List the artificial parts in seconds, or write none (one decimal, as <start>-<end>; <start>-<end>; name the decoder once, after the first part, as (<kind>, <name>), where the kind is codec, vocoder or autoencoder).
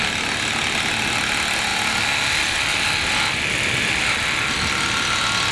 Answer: none